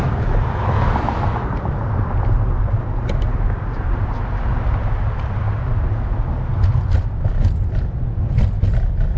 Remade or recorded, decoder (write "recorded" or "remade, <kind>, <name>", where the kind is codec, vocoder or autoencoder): recorded